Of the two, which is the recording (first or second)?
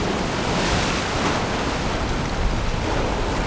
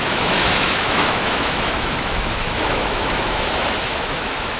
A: first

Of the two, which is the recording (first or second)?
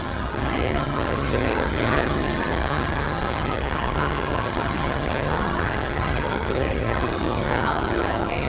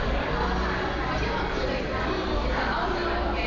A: second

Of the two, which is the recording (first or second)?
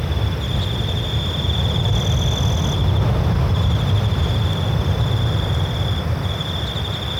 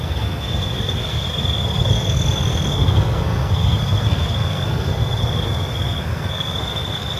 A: first